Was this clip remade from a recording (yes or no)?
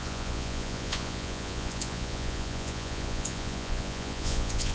yes